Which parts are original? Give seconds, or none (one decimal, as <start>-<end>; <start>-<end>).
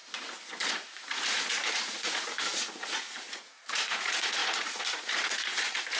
0.0-0.7